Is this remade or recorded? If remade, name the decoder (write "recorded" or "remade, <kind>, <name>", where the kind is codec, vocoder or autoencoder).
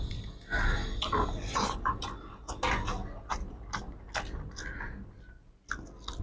recorded